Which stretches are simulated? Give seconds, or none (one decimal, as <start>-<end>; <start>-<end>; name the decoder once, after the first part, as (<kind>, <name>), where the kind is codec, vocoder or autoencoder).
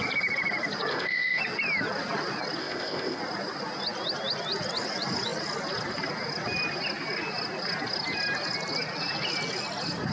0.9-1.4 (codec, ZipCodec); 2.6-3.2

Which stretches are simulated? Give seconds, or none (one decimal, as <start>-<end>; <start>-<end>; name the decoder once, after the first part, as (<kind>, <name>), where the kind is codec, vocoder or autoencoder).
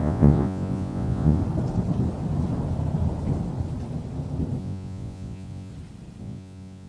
0.0-1.4 (vocoder, Vocos); 4.6-5.7; 6.2-6.9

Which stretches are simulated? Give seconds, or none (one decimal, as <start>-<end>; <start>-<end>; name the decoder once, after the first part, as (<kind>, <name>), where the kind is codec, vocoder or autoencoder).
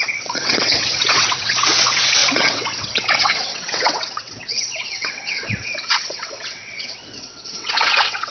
0.0-8.3 (vocoder, WaveNeXt)